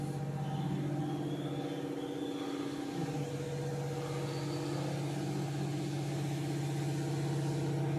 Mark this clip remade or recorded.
recorded